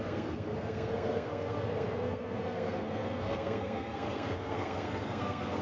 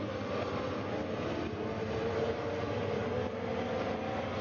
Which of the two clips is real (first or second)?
second